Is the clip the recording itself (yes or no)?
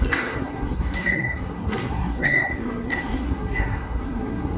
no